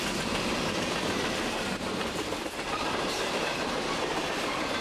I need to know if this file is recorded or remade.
recorded